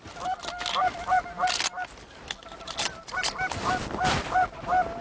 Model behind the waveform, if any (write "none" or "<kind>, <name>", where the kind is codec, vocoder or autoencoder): none